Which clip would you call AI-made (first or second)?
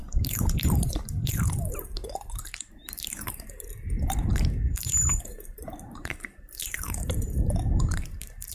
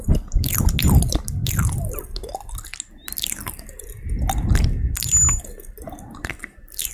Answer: first